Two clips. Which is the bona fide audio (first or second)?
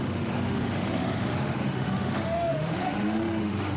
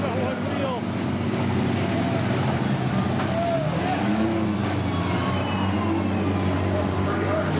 second